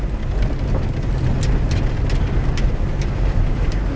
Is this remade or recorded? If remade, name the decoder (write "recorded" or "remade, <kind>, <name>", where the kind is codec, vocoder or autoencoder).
recorded